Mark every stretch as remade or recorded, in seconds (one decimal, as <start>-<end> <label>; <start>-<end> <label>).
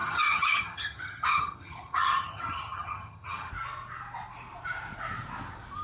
0.0-3.5 remade; 3.5-5.8 recorded